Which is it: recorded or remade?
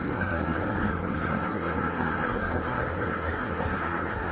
remade